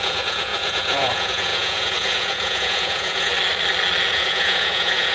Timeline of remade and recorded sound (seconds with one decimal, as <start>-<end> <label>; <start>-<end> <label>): 0.0-3.3 remade; 3.3-4.1 recorded; 4.1-5.1 remade